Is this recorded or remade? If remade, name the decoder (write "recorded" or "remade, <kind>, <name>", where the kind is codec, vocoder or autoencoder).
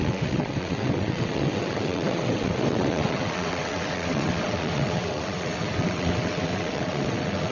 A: remade, vocoder, WaveNeXt